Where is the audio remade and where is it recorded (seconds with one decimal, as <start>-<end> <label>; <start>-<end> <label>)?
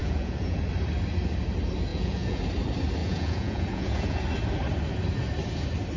0.0-0.6 remade; 0.6-1.9 recorded; 1.9-2.4 remade; 2.4-3.0 recorded; 3.0-4.2 remade; 4.2-6.0 recorded